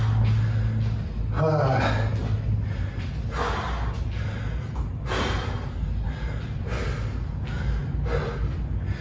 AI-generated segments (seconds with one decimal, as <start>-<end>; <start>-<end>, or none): none